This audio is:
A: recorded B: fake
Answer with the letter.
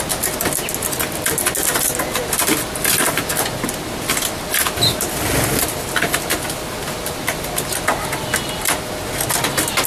A